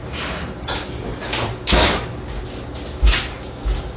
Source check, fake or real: real